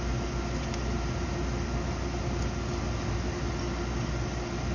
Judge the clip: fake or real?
real